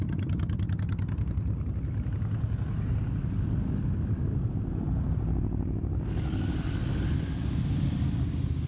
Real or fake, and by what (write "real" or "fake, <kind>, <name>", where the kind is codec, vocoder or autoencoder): real